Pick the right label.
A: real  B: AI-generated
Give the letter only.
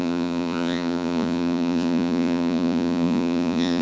B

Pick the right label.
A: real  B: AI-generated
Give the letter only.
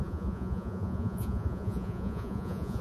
B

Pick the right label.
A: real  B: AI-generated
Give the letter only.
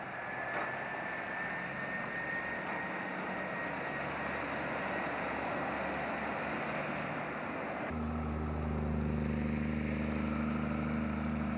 A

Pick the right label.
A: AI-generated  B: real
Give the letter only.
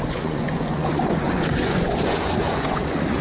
A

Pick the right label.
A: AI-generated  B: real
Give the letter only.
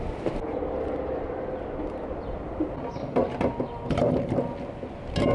B